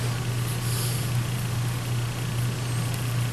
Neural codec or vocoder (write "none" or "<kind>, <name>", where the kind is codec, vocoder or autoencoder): none